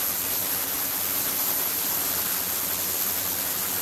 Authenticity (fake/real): real